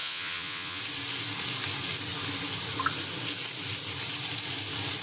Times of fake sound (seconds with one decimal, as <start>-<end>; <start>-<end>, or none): 0.0-0.8